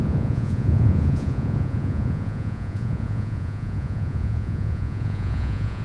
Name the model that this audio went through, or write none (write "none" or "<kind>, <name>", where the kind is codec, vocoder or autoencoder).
vocoder, Vocos